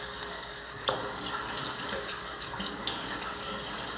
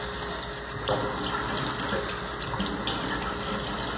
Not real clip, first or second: first